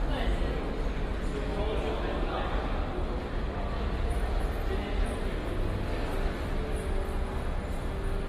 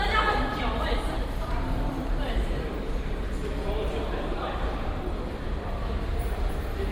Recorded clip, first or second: first